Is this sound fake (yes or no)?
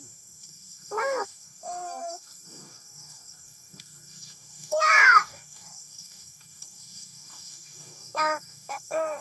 yes